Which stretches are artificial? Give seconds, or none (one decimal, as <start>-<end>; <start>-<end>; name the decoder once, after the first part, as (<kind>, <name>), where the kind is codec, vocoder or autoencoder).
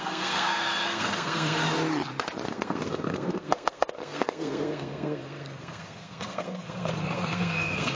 0.0-1.6 (codec, SNAC); 2.5-7.9